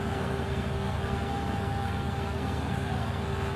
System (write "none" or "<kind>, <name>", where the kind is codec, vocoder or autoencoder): codec, SNAC